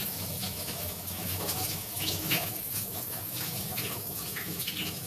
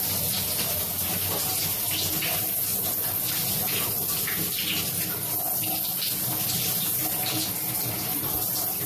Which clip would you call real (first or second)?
second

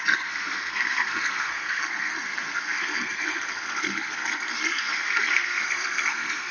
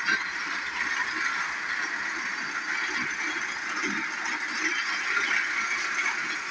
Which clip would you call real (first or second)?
second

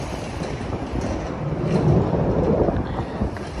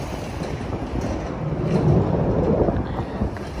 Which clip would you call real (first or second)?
second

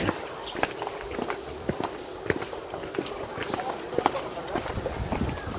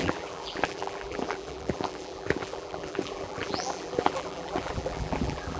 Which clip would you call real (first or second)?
first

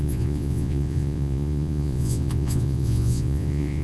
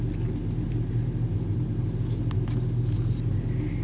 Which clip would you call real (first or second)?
second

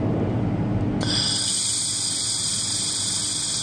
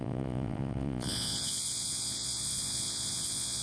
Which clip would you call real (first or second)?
first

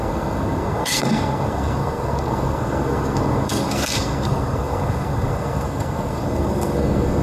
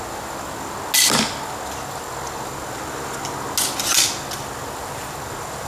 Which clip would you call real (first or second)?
second